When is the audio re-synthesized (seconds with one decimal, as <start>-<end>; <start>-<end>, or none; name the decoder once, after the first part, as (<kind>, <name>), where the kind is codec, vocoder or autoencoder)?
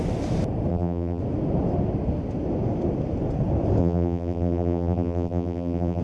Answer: 0.7-1.2 (vocoder, BigVGAN v2); 3.8-6.0